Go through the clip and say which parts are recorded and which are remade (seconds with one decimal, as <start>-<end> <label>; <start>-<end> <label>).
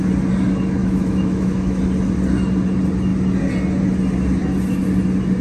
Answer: 0.0-0.8 recorded; 0.8-1.8 remade; 1.8-5.4 recorded